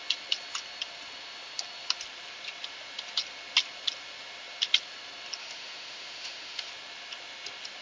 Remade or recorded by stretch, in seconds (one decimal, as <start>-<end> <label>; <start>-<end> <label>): 0.0-5.4 recorded; 5.4-6.7 remade; 6.7-7.8 recorded